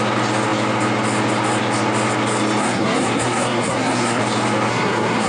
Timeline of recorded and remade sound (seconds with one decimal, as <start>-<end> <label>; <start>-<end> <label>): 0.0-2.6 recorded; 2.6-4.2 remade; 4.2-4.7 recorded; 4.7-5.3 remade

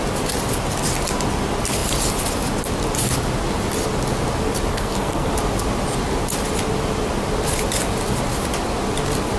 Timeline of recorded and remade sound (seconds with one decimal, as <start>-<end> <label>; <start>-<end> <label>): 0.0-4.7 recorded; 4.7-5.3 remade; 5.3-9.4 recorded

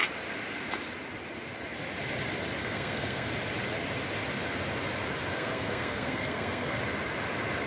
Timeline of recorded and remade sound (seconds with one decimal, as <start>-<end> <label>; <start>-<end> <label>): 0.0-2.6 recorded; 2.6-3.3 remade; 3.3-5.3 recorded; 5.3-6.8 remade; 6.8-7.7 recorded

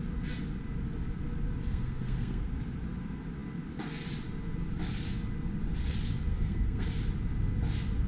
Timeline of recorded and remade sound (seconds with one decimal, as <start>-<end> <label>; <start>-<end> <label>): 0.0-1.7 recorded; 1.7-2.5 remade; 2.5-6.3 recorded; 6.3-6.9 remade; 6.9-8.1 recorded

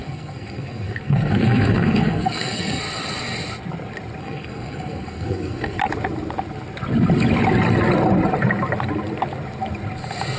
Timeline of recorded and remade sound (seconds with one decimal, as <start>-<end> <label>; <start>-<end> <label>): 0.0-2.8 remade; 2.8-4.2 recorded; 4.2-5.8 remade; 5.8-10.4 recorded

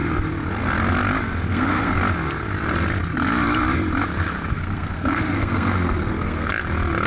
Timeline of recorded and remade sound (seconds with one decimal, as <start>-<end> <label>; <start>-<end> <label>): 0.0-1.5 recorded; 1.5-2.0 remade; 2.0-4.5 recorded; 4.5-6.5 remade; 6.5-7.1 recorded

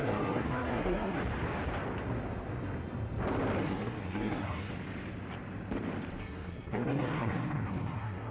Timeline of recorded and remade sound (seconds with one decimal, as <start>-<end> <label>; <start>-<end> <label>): 0.0-1.2 remade; 1.2-3.6 recorded; 3.6-4.7 remade; 4.7-6.2 recorded; 6.2-8.3 remade

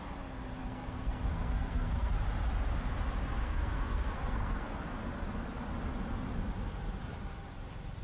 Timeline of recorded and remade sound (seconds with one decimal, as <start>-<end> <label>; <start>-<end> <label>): 0.0-0.6 recorded; 0.6-2.1 remade; 2.1-3.4 recorded; 3.4-4.8 remade; 4.8-8.0 recorded